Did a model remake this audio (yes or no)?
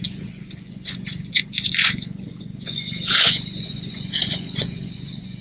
yes